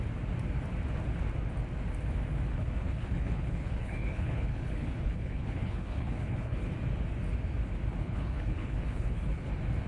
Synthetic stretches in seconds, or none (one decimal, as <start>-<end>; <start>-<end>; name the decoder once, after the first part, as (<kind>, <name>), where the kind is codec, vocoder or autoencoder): 2.5-6.7 (codec, HILCodec); 8.0-9.5